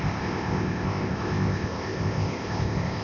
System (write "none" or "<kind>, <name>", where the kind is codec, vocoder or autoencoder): codec, ZipCodec